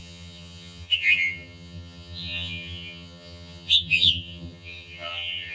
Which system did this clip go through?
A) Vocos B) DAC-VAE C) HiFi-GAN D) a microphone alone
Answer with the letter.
C